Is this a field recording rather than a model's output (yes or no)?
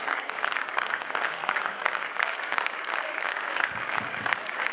no